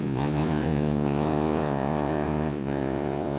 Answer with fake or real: fake